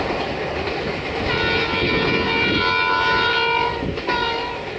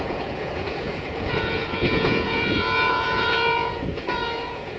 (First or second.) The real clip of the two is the first